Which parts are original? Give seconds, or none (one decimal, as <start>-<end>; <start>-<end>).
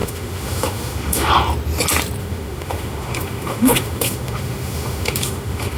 1.3-2.2